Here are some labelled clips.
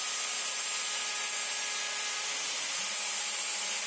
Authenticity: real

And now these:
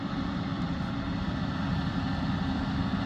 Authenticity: real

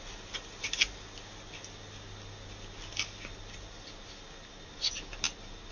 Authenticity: real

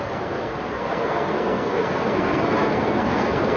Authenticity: fake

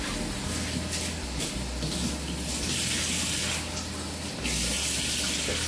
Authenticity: real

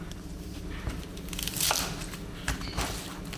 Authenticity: real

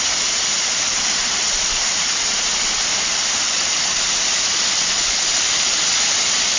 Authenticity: real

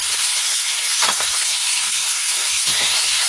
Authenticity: fake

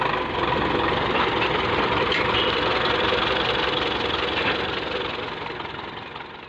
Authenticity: real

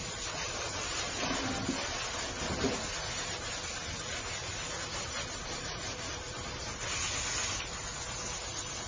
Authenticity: real